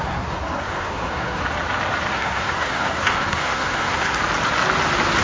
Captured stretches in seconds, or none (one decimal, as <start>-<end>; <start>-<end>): 1.4-2.1; 4.2-5.2